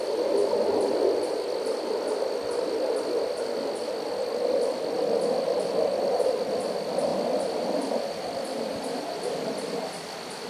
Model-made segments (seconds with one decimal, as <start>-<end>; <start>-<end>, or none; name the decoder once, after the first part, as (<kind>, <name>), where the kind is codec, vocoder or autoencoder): none